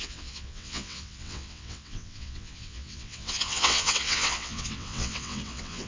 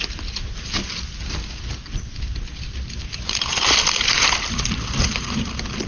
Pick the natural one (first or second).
second